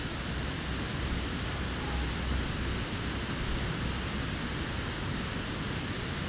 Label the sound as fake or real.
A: real